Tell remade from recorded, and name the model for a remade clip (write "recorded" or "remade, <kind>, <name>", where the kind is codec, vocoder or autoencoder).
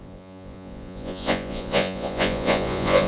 remade, vocoder, Vocos